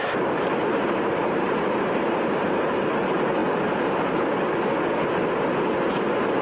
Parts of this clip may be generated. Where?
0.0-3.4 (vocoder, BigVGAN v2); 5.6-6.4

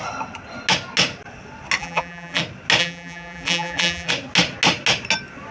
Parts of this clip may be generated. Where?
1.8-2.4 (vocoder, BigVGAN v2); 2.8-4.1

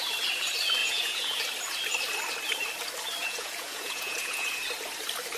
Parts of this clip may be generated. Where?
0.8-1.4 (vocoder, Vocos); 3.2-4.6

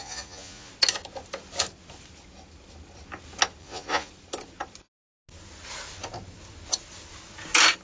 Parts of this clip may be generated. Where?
0.0-0.7 (vocoder, Vocos); 3.6-4.1

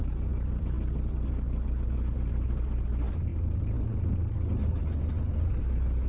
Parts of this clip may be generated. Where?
none